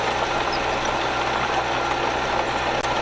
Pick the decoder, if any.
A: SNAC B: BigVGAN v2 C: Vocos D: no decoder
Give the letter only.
D